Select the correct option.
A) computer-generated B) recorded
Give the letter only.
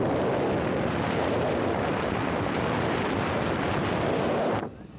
A